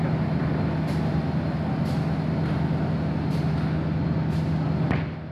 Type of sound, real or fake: real